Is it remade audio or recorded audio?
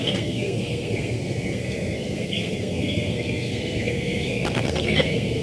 remade